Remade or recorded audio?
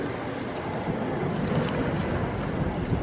recorded